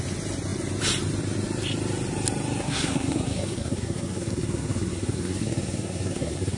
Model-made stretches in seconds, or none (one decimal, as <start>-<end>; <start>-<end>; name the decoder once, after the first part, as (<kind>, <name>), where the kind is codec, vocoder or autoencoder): 2.6-6.6 (codec, SNAC)